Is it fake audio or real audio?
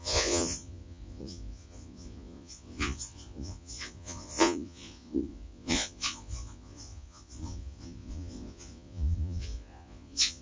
fake